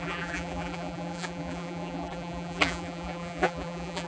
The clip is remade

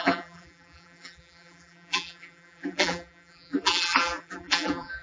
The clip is remade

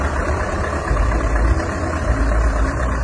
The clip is remade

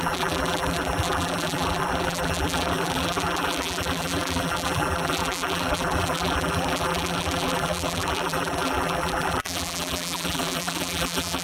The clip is remade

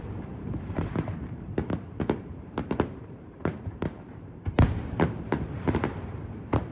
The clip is remade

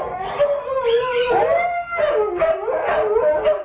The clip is recorded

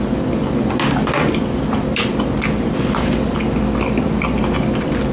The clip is recorded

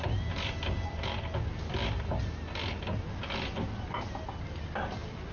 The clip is recorded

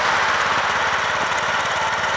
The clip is recorded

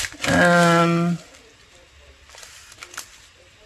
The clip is recorded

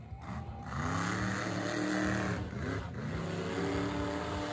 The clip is recorded